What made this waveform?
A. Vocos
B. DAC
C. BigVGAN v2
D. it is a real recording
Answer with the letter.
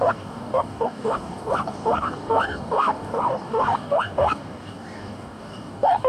B